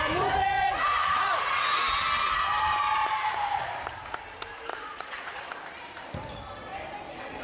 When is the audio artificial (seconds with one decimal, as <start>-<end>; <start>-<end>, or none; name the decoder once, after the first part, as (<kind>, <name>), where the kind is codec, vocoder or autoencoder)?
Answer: 0.4-1.8 (vocoder, Vocos); 3.0-3.6; 4.7-5.4

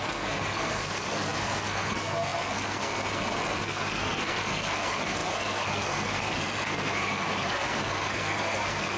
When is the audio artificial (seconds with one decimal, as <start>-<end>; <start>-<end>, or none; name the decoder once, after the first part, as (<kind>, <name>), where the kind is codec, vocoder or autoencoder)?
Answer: 0.0-9.0 (codec, SNAC)

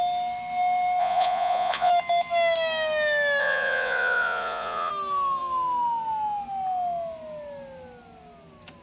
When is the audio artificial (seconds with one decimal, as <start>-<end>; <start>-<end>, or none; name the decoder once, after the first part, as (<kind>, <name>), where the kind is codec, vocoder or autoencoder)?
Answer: 1.0-1.9 (vocoder, Vocos); 3.4-4.9

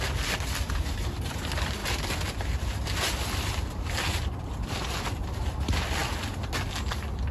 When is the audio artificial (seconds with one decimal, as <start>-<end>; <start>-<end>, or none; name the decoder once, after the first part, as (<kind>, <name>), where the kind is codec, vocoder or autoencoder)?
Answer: none

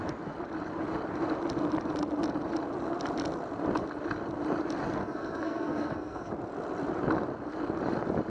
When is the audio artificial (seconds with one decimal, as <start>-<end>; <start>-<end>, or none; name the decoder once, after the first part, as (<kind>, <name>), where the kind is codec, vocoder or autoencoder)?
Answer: 5.0-6.3 (codec, SNAC)